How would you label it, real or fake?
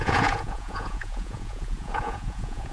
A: fake